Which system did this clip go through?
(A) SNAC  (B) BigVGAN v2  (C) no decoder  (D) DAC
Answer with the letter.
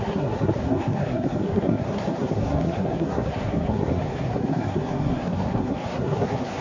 A